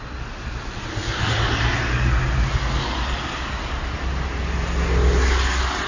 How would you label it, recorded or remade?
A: recorded